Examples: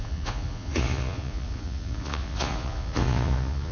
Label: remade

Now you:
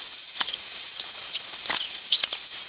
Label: remade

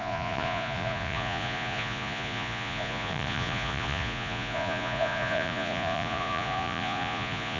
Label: remade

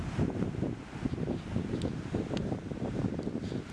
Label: recorded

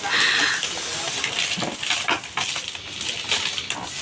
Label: recorded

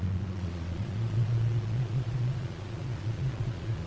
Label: remade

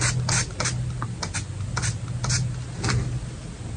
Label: recorded